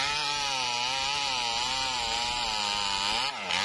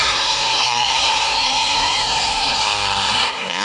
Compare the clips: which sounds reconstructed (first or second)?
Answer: second